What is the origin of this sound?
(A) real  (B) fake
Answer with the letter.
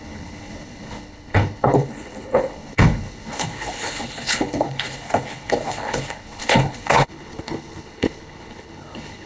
B